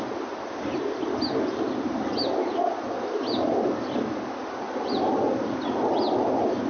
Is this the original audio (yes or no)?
yes